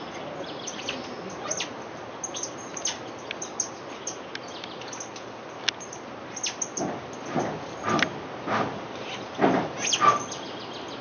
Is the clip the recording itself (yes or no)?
yes